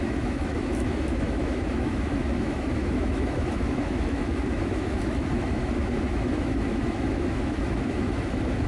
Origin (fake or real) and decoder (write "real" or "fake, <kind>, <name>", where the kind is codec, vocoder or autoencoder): fake, autoencoder, DAC-VAE